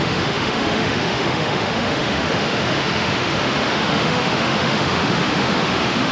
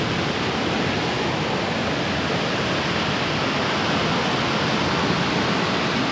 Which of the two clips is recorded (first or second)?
second